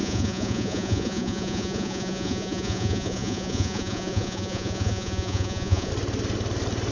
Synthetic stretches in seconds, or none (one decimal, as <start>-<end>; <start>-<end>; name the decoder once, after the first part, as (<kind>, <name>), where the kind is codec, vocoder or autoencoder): 0.0-5.9 (vocoder, Vocos)